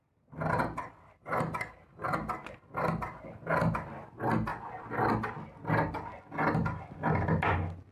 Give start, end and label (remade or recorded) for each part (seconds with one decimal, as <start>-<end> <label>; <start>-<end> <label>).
0.0-7.9 recorded